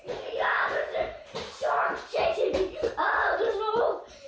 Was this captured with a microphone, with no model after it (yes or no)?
no